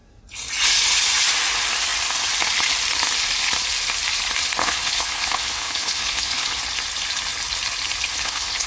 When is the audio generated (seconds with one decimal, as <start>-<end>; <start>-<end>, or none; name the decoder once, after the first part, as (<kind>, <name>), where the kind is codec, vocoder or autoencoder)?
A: 4.6-6.6 (codec, HILCodec); 8.1-8.7